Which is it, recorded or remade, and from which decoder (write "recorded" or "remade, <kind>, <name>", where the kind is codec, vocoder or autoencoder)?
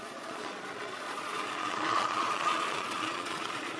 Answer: remade, vocoder, Vocos